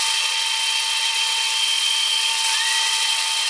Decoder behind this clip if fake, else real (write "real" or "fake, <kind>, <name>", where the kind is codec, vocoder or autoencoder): fake, vocoder, WaveNeXt